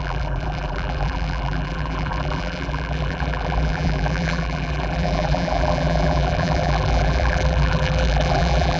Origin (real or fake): fake